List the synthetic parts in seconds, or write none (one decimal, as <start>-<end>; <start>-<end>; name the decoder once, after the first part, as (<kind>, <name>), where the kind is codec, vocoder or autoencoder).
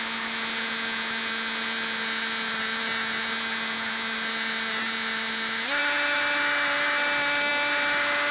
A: none